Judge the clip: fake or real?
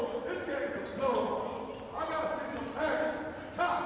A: real